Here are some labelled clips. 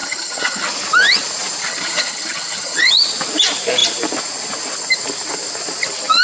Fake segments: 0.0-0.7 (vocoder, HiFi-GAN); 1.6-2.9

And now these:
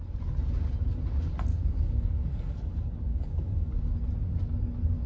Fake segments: 1.5-2.7 (codec, DAC); 3.1-3.7

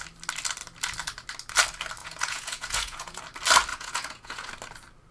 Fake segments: 2.0-3.2 (vocoder, Vocos); 3.7-4.5

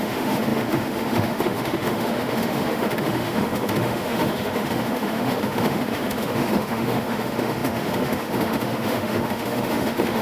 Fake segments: 0.0-10.2 (autoencoder, DAC-VAE)

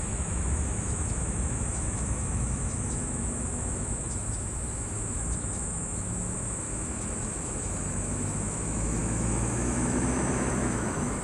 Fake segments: 0.0-11.2 (autoencoder, DAC-VAE)

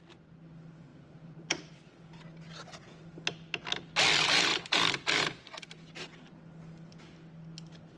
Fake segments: none